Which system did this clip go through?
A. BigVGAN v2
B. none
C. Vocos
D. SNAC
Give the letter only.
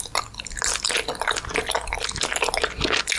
B